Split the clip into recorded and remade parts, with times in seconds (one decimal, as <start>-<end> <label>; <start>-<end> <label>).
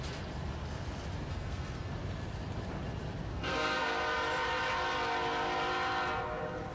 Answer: 0.0-1.3 recorded; 1.3-1.9 remade; 1.9-3.3 recorded; 3.3-4.0 remade; 4.0-6.7 recorded